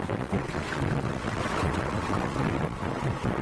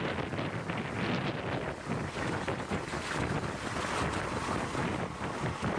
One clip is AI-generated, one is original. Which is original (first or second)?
second